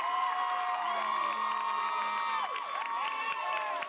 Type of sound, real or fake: real